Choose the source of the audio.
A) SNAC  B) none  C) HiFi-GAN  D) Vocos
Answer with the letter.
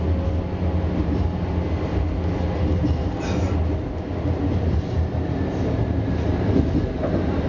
B